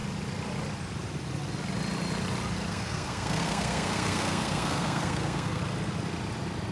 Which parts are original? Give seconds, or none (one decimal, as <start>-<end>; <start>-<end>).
0.0-2.7; 5.6-6.7